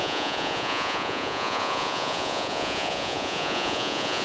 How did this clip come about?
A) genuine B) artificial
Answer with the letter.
B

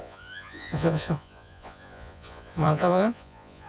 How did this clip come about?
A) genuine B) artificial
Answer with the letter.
B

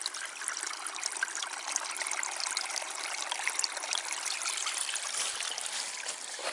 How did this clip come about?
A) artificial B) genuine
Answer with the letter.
B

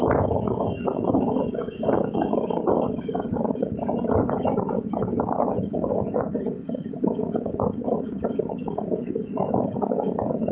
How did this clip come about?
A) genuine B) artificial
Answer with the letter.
B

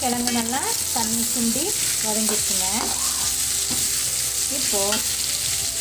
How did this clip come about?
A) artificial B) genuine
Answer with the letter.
B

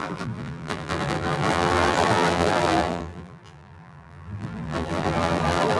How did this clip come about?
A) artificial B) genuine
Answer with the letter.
A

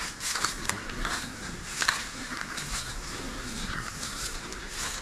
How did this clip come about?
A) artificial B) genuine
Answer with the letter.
A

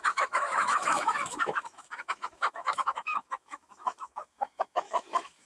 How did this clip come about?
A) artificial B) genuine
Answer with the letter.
A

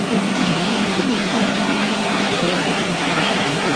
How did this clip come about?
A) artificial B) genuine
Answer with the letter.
A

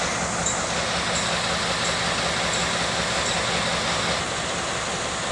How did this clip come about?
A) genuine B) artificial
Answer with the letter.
A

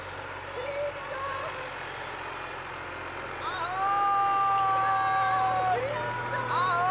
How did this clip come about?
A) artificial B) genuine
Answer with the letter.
B